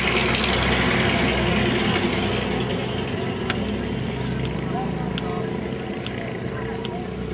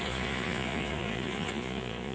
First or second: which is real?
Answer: first